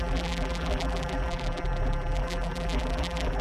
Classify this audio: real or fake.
fake